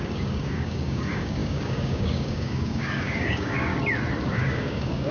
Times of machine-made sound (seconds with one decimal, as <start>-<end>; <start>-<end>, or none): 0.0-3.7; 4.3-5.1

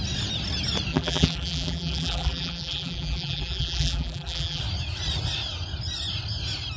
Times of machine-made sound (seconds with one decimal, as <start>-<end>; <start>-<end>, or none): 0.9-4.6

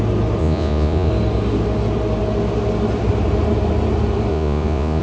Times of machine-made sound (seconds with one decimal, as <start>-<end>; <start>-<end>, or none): 0.4-1.1; 4.3-5.0

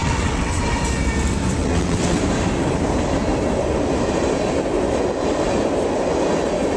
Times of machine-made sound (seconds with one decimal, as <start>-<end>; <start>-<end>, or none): 0.0-0.6; 1.6-2.2